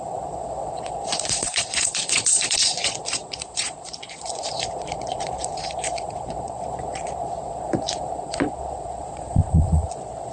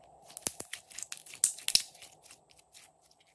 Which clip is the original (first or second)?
second